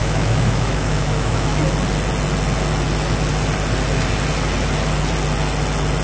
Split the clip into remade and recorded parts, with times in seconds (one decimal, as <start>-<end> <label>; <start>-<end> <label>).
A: 0.0-1.6 remade; 1.6-6.0 recorded